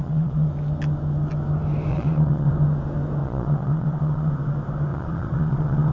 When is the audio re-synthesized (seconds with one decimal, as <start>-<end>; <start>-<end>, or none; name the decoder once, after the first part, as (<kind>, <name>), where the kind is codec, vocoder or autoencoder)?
0.0-0.5 (vocoder, Vocos); 1.9-2.5; 3.2-4.3; 4.9-5.9